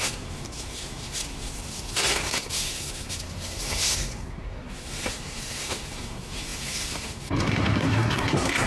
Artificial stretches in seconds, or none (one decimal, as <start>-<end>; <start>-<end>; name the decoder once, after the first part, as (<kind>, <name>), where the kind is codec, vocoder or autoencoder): 0.0-8.7 (codec, SNAC)